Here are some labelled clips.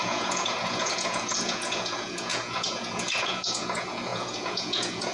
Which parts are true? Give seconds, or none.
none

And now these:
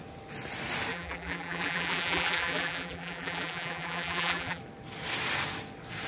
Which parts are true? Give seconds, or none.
0.0-0.9; 4.6-6.1

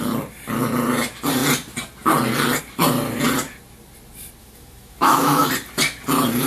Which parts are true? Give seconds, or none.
0.0-4.4; 5.5-6.5

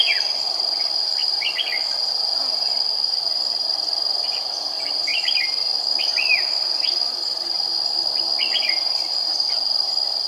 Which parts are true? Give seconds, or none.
5.1-8.4